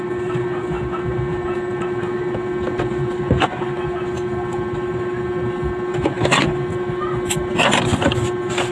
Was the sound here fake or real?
real